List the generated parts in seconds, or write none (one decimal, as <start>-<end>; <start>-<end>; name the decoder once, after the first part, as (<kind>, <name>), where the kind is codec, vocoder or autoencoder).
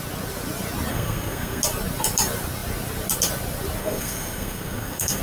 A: 0.9-1.6 (codec, SNAC); 3.8-5.2